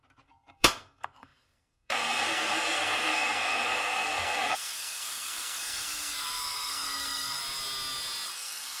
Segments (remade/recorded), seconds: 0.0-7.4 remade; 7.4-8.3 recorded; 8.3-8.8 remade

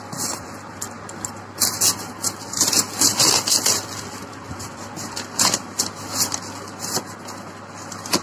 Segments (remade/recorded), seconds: 0.0-8.2 recorded

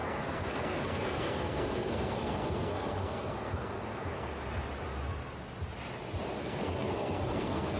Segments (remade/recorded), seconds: 0.0-4.3 remade; 4.3-6.4 recorded; 6.4-7.8 remade

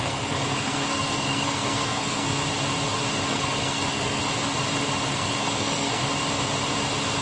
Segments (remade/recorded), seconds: 0.0-2.4 remade; 2.4-3.3 recorded; 3.3-4.2 remade; 4.2-5.1 recorded; 5.1-6.0 remade; 6.0-7.2 recorded

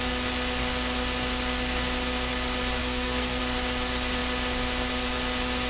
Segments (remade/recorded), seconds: 0.0-2.8 recorded; 2.8-3.4 remade; 3.4-5.7 recorded